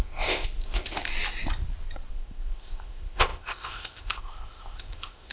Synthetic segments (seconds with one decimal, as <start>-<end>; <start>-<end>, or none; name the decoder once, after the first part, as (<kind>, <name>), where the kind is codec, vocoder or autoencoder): 0.0-1.1 (codec, ZipCodec); 2.1-5.3